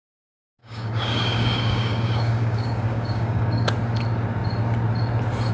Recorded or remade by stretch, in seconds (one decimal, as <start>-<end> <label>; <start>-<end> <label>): 0.0-0.6 recorded; 0.6-3.7 remade; 3.7-5.5 recorded